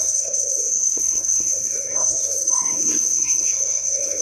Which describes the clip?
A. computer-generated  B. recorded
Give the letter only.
A